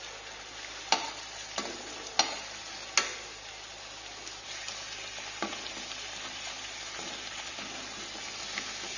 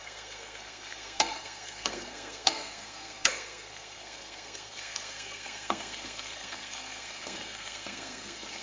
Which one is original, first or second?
first